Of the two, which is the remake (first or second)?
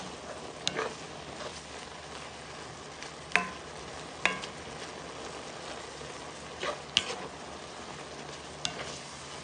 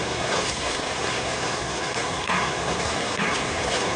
second